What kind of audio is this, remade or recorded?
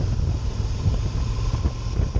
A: remade